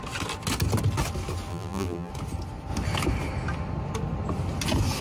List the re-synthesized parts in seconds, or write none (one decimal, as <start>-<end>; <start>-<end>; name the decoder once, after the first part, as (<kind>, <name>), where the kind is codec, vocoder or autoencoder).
1.5-2.1 (vocoder, BigVGAN v2)